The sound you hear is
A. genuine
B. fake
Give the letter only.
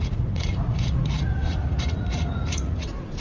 B